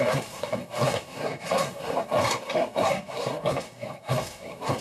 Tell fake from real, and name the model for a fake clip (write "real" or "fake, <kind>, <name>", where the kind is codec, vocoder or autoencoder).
fake, codec, SNAC